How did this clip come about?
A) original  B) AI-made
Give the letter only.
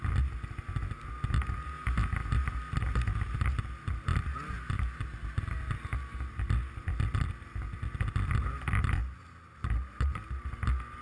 A